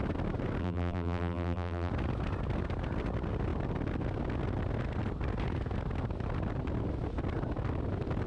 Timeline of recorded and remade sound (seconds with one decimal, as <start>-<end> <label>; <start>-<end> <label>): 0.0-0.6 recorded; 0.6-1.9 remade; 1.9-8.3 recorded